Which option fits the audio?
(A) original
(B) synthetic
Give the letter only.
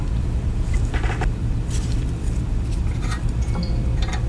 B